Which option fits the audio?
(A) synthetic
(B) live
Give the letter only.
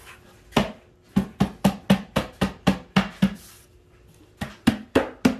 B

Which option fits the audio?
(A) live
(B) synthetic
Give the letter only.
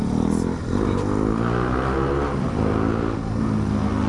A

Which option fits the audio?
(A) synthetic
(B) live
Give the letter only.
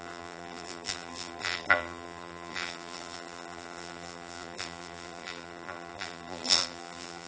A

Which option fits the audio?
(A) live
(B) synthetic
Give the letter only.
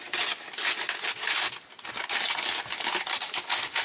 A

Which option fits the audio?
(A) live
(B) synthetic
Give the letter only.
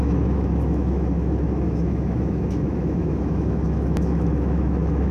B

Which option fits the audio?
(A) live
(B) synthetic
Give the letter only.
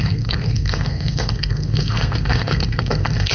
B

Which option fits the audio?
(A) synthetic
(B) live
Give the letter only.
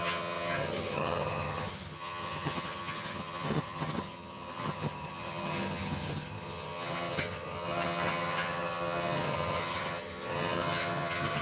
A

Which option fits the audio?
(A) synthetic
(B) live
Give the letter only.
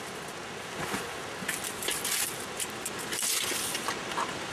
B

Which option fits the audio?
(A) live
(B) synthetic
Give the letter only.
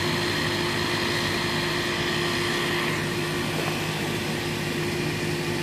A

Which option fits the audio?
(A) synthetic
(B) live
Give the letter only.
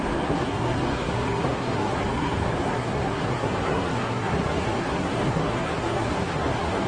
A